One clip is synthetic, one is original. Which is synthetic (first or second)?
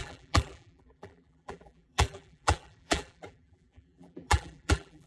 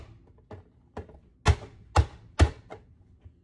first